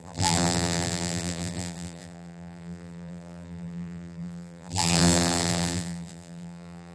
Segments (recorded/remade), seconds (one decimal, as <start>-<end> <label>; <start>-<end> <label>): 0.0-6.9 remade